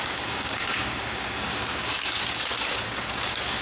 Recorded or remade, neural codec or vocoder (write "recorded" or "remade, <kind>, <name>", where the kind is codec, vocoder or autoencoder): remade, codec, DAC